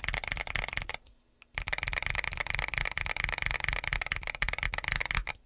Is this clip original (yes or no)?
yes